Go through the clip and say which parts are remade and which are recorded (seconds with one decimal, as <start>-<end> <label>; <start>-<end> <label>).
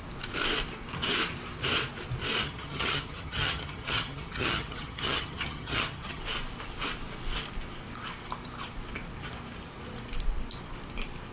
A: 0.0-2.4 recorded; 2.4-6.2 remade; 6.2-11.3 recorded